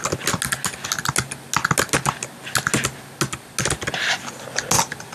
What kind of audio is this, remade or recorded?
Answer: recorded